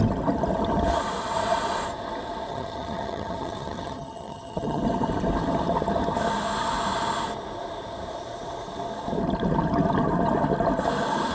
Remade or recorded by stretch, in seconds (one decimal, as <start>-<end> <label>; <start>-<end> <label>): 0.0-2.5 recorded; 2.5-4.8 remade; 4.8-11.3 recorded